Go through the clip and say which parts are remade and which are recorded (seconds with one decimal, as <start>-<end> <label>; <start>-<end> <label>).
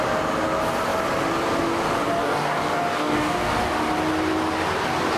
0.0-2.2 recorded; 2.2-3.7 remade; 3.7-5.2 recorded